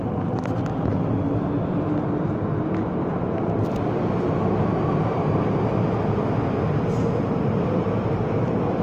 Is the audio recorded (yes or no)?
yes